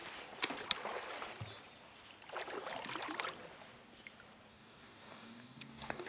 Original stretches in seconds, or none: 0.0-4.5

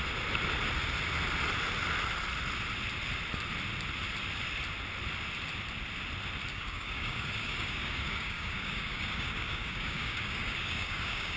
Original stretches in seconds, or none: 0.0-6.5